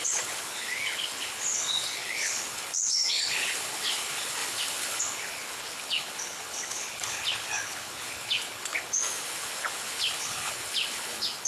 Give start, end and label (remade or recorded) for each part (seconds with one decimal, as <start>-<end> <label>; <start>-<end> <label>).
0.0-11.5 remade